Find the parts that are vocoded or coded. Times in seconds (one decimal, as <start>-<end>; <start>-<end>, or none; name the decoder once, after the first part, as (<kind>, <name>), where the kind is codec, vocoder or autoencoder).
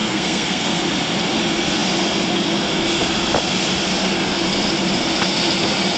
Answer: 0.0-0.8 (codec, SNAC)